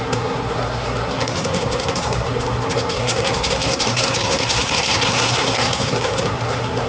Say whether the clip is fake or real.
fake